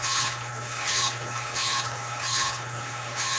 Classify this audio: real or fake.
fake